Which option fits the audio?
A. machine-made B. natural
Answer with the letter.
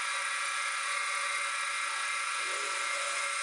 A